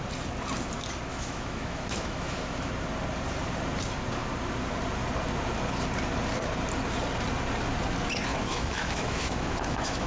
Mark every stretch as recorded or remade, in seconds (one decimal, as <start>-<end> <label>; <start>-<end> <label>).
0.0-1.1 recorded; 1.1-2.7 remade; 2.7-8.3 recorded; 8.3-10.1 remade